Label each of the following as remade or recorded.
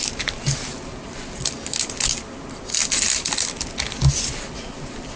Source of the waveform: recorded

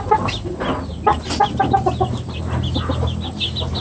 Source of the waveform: recorded